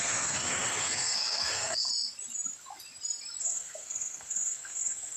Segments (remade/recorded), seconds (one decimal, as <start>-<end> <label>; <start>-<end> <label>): 0.0-1.9 remade; 1.9-3.4 recorded; 3.4-5.2 remade